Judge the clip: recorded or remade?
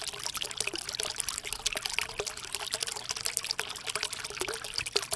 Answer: recorded